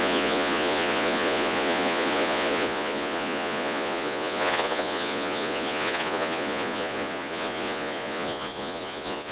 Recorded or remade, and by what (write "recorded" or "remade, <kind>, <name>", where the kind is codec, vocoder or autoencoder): remade, vocoder, Vocos